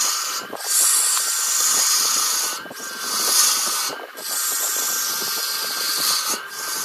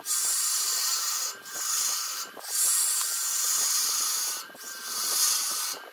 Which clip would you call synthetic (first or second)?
second